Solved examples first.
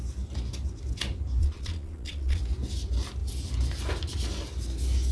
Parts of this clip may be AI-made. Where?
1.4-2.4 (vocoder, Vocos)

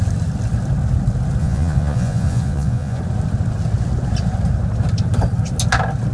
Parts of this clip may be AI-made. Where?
1.4-3.0 (vocoder, Vocos)